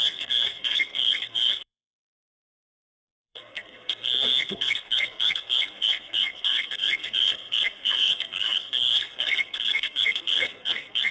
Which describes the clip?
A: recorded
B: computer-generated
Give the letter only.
B